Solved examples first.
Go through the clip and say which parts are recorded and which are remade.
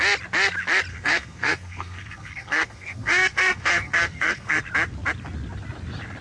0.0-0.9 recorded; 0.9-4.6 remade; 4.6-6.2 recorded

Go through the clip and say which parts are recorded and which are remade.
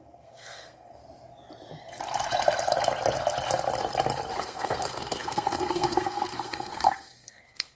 0.0-1.0 remade; 1.0-4.4 recorded; 4.4-7.8 remade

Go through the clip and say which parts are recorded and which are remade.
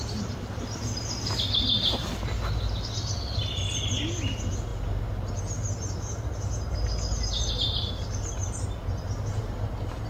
0.0-10.1 recorded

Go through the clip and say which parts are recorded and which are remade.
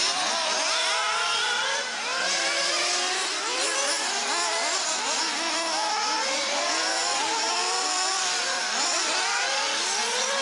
0.0-2.1 recorded; 2.1-2.9 remade; 2.9-10.4 recorded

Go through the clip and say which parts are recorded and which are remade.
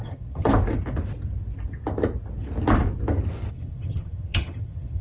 0.0-0.5 remade; 0.5-3.5 recorded; 3.5-5.0 remade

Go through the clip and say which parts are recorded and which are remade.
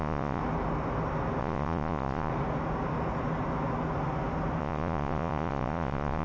0.0-0.4 remade; 0.4-1.4 recorded; 1.4-2.3 remade; 2.3-4.6 recorded; 4.6-6.2 remade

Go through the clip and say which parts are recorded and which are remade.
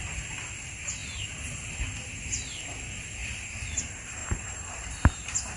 0.0-3.2 recorded; 3.2-3.8 remade; 3.8-4.2 recorded; 4.2-5.6 remade